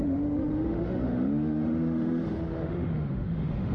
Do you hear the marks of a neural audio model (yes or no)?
yes